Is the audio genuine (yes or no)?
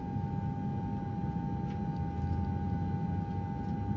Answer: yes